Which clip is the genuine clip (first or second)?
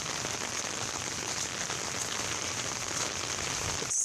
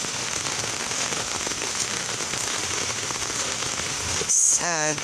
first